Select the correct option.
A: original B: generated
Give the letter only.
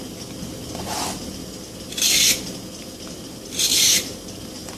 A